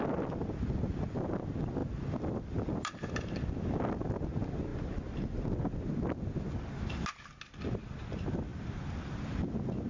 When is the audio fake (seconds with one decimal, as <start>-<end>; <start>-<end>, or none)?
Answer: none